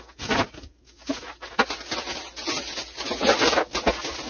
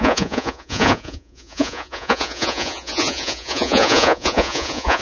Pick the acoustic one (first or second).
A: first